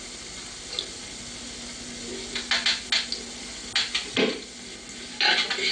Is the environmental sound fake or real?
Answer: real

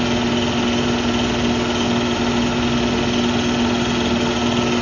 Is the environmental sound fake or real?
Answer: real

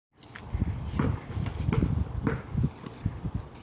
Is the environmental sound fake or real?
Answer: real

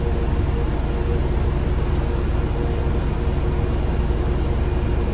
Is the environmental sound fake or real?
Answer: real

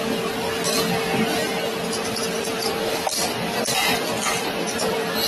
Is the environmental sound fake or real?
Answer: real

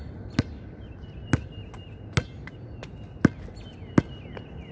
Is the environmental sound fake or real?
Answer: real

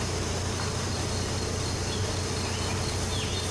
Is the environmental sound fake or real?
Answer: real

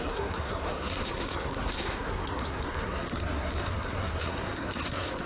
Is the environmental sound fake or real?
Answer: fake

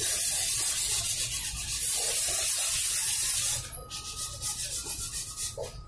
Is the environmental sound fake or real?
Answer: real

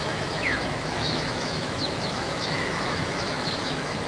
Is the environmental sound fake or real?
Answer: fake